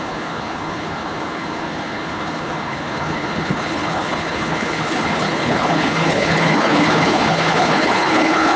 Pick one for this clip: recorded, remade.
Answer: remade